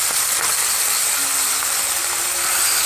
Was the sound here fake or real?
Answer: real